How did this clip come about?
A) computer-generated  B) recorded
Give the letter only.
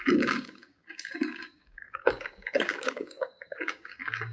A